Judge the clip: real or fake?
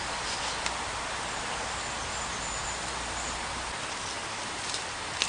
real